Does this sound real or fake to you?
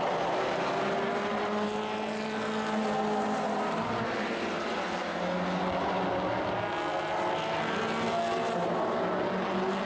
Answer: real